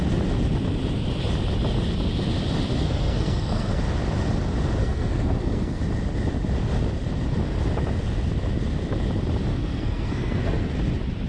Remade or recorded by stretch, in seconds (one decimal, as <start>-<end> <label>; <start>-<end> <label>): 0.0-2.8 recorded; 2.8-3.8 remade; 3.8-4.8 recorded; 4.8-5.8 remade; 5.8-9.5 recorded; 9.5-10.7 remade; 10.7-11.3 recorded